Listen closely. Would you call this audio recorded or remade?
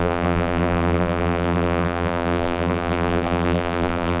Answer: remade